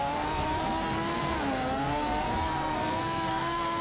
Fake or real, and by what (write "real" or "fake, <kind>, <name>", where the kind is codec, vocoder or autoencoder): fake, codec, SNAC